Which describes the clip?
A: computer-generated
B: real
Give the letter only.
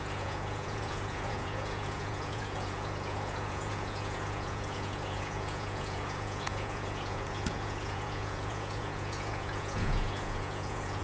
A